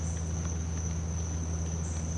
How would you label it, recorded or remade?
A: recorded